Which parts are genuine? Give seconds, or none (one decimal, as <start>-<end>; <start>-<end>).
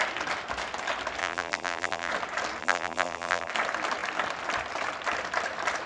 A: 0.0-1.2; 2.1-2.6; 3.5-5.9